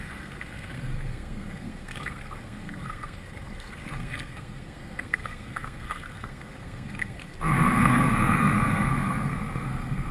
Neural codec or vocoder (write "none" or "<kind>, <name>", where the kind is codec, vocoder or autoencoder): codec, SNAC